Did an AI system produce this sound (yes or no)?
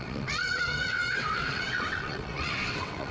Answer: yes